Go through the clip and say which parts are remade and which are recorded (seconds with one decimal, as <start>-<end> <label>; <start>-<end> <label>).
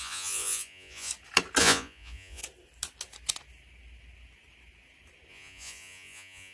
0.0-1.1 remade; 1.1-1.6 recorded; 1.6-2.4 remade; 2.4-5.3 recorded; 5.3-6.5 remade